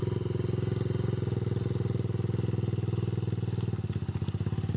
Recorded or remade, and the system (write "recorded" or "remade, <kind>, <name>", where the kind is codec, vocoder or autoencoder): recorded